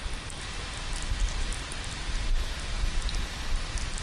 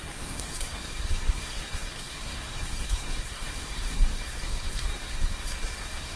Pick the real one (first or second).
first